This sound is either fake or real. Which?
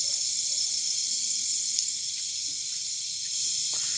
real